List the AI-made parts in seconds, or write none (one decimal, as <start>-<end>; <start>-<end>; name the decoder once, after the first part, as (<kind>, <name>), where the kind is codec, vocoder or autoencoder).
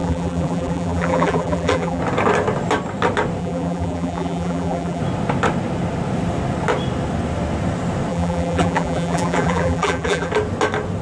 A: 0.0-2.0 (vocoder, BigVGAN v2); 3.4-5.0; 8.1-10.3